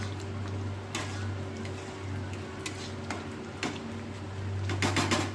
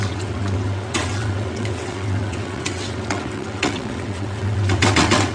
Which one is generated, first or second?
second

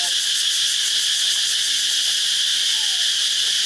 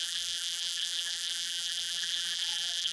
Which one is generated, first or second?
second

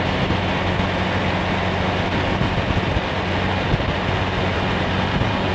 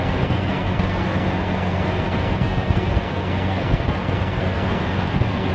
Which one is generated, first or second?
second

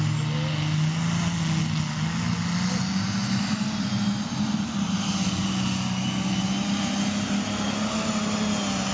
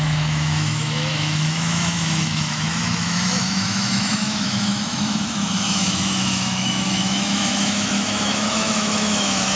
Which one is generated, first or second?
second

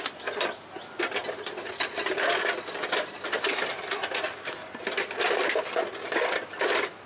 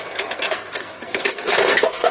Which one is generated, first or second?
second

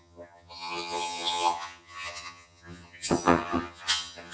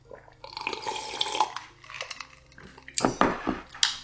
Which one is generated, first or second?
first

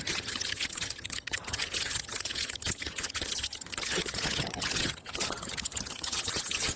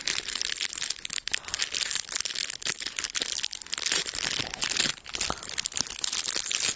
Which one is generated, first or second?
first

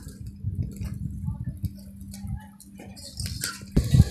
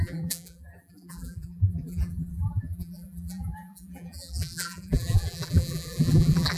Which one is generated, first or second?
second